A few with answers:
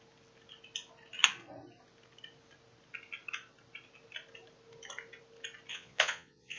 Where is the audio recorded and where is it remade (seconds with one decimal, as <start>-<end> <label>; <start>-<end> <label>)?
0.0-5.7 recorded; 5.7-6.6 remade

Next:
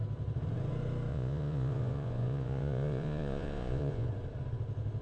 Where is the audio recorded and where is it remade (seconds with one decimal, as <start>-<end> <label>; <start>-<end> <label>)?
0.0-1.1 recorded; 1.1-4.1 remade; 4.1-5.0 recorded

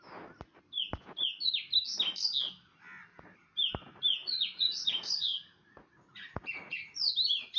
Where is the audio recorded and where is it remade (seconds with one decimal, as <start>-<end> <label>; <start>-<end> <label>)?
0.0-4.2 recorded; 4.2-7.1 remade; 7.1-7.6 recorded

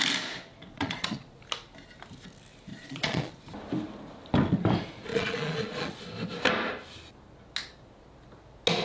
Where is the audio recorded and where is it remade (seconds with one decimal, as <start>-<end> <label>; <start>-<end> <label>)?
0.0-0.7 recorded; 0.7-1.4 remade; 1.4-2.7 recorded; 2.7-3.3 remade; 3.3-5.1 recorded; 5.1-6.0 remade; 6.0-8.8 recorded

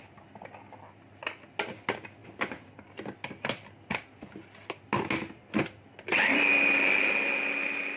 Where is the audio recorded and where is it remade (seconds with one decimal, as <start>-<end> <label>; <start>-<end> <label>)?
0.0-8.0 recorded

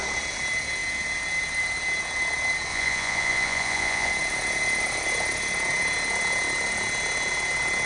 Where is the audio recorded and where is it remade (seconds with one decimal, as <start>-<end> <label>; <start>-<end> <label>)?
0.0-2.7 recorded; 2.7-4.1 remade; 4.1-7.9 recorded